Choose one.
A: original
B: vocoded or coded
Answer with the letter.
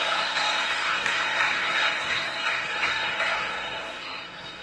B